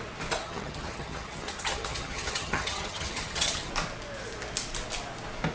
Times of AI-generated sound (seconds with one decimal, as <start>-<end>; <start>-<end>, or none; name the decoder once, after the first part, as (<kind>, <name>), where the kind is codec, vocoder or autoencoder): 0.4-3.7 (vocoder, HiFi-GAN)